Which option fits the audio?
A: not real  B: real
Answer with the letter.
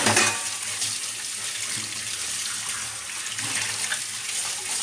B